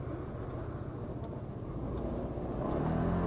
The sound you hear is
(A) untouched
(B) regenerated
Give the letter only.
A